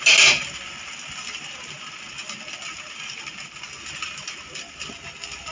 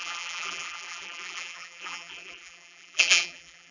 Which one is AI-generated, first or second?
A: second